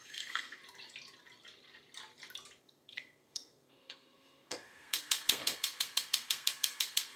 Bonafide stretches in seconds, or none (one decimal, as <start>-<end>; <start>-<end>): 0.6-2.6